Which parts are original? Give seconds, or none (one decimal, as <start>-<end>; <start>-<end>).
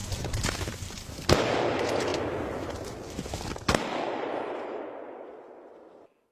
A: 0.0-6.3